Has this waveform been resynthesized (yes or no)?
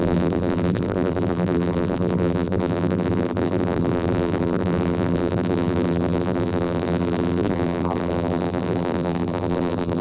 yes